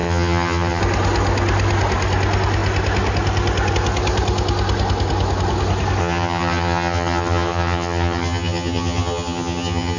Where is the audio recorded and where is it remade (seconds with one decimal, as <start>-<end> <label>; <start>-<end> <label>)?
0.0-0.8 remade; 0.8-6.0 recorded; 6.0-10.0 remade